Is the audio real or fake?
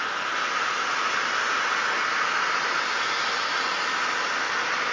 real